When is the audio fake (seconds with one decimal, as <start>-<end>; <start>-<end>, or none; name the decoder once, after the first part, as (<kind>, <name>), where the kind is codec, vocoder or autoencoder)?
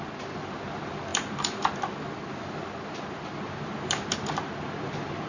none